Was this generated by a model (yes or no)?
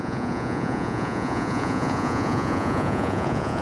yes